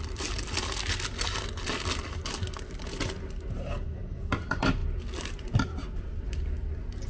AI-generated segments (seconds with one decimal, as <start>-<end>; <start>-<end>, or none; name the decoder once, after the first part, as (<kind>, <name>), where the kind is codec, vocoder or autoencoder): none